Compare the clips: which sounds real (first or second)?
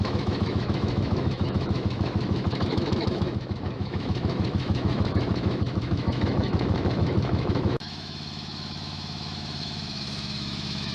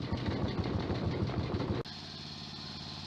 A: second